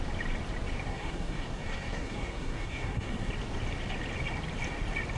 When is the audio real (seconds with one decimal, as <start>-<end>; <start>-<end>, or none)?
0.0-0.9; 3.3-5.2